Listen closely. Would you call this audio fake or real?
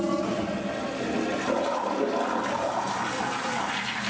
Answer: real